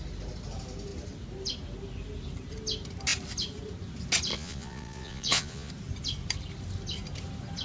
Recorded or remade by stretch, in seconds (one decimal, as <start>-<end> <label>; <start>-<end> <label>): 0.0-4.3 recorded; 4.3-5.7 remade; 5.7-7.6 recorded

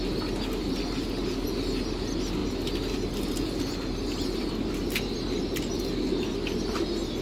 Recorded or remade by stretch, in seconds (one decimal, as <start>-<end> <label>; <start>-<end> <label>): 0.0-7.2 recorded

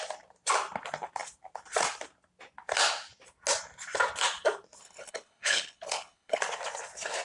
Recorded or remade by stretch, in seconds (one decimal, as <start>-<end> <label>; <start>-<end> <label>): 0.0-4.8 recorded; 4.8-6.4 remade; 6.4-7.2 recorded

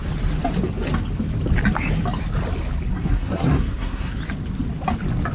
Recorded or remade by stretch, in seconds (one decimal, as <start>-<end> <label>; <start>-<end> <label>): 0.0-2.9 recorded; 2.9-4.2 remade; 4.2-5.3 recorded